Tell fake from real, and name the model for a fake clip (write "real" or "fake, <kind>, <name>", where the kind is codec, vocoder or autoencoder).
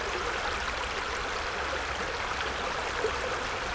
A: real